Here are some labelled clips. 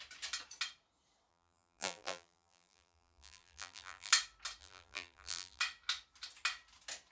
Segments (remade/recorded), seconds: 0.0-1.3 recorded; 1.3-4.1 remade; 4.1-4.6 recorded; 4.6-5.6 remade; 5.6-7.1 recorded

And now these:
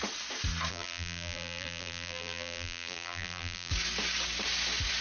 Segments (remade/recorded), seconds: 0.0-0.7 recorded; 0.7-3.7 remade; 3.7-5.0 recorded

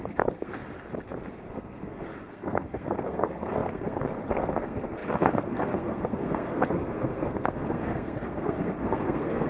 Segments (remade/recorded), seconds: 0.0-0.6 remade; 0.6-1.3 recorded; 1.3-9.5 remade

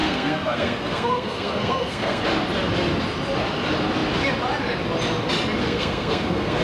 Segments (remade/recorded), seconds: 0.0-2.2 remade; 2.2-5.6 recorded; 5.6-6.6 remade